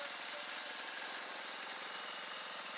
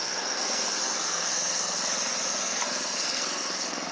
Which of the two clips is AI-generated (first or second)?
second